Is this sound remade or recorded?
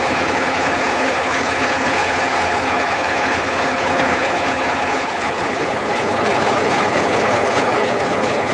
remade